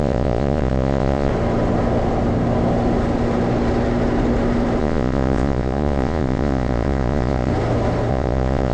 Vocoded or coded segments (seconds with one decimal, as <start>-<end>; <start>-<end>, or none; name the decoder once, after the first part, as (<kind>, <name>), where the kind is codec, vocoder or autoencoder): 0.0-1.3 (vocoder, Vocos); 4.8-7.5; 8.1-8.7